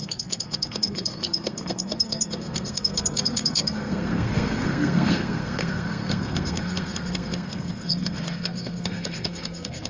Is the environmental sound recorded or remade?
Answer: remade